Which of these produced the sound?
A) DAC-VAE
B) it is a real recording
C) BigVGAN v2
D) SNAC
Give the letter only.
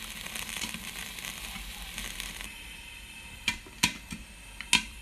B